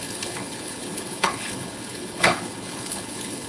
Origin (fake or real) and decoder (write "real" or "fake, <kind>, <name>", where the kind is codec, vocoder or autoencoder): fake, codec, HILCodec